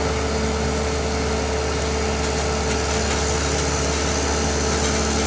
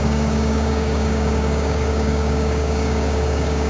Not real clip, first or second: second